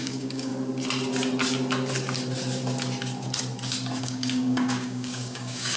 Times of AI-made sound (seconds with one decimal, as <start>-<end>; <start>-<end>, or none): 0.0-0.5; 4.0-5.8